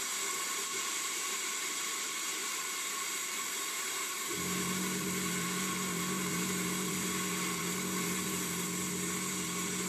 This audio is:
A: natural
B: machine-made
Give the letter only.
B